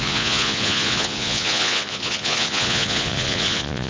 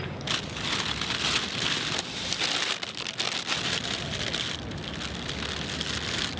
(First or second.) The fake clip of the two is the first